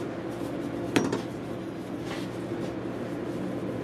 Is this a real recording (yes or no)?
yes